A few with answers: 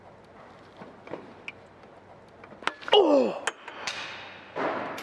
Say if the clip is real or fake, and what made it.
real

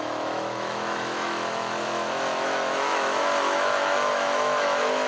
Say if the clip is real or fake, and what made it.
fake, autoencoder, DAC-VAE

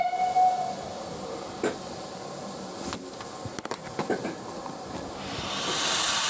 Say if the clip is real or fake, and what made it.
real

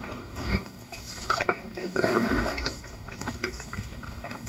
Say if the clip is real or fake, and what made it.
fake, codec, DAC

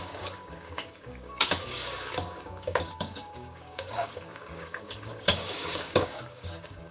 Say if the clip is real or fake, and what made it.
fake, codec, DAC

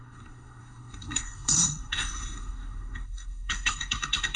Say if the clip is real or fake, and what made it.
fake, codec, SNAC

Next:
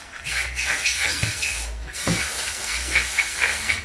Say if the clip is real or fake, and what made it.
fake, codec, SNAC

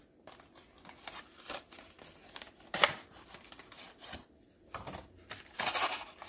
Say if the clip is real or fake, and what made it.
real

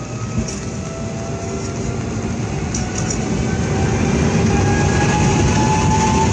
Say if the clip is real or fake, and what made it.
real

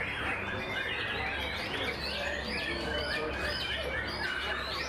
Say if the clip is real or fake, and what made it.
real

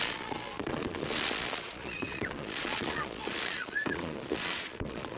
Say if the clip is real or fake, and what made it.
fake, vocoder, Vocos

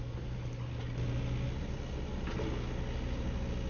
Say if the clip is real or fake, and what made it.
real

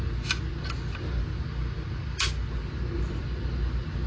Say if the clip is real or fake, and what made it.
real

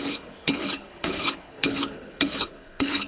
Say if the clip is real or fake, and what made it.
fake, codec, HILCodec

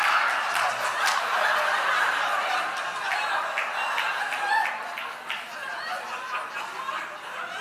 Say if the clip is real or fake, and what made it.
real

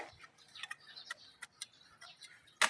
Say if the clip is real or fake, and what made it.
real